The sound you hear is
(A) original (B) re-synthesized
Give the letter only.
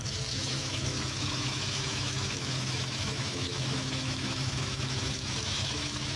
B